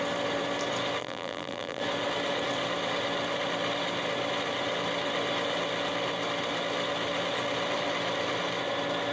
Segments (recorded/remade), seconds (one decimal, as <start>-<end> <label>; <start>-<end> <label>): 0.0-1.0 recorded; 1.0-1.8 remade; 1.8-9.1 recorded